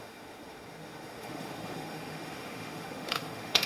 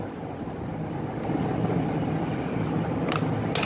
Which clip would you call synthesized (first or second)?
first